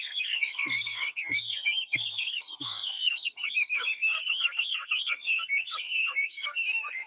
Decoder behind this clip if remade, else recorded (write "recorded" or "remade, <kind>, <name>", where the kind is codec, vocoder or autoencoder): remade, codec, SNAC